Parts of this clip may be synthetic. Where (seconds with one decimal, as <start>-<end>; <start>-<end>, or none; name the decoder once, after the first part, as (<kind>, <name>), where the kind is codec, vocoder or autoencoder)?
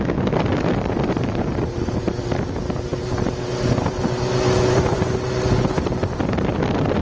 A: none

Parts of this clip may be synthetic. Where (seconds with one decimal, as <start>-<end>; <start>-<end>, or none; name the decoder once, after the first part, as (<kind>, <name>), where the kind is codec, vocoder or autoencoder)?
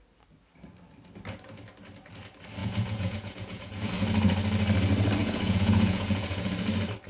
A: 2.6-3.9 (vocoder, Vocos); 5.2-6.5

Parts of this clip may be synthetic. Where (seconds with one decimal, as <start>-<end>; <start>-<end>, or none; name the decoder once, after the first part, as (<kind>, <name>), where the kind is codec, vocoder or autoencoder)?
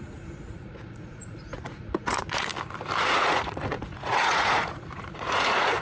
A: 0.0-2.5 (vocoder, Vocos); 3.0-5.8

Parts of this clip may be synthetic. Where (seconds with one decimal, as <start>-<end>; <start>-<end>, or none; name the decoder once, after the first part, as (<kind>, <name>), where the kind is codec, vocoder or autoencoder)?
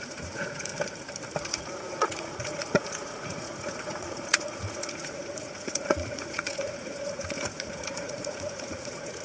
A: 0.0-0.7 (vocoder, Vocos); 1.4-9.2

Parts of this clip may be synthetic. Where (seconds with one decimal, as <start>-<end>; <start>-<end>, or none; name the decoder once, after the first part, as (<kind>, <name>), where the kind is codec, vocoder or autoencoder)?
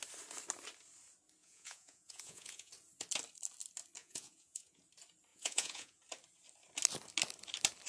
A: 1.4-2.7 (vocoder, Vocos); 4.0-4.8; 5.3-6.0